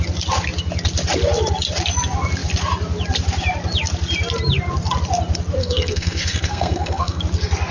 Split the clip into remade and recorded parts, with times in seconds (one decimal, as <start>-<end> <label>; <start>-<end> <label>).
0.0-5.6 recorded; 5.6-7.2 remade; 7.2-7.7 recorded